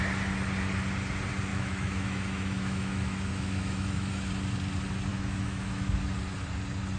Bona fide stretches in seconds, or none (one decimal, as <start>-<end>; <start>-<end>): 0.0-1.5; 4.3-5.1; 6.0-7.0